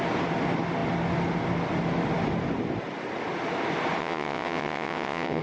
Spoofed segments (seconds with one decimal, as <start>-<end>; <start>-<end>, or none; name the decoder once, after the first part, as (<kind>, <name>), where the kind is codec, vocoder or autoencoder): 4.0-5.4 (vocoder, WaveNeXt)